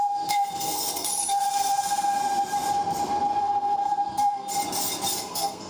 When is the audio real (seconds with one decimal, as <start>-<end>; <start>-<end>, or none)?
2.2-3.4; 4.5-5.3